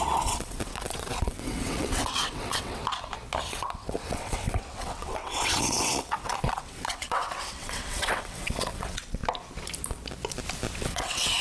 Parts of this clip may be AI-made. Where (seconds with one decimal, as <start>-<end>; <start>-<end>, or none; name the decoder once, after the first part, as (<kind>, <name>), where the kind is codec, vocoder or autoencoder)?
0.0-2.8 (vocoder, WaveNeXt); 3.4-9.2; 10.8-11.4